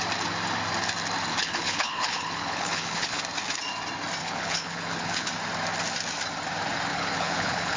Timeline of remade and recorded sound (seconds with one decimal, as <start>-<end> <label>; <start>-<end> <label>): 0.0-1.3 recorded; 1.3-3.2 remade; 3.2-4.2 recorded; 4.2-5.3 remade; 5.3-6.9 recorded; 6.9-7.8 remade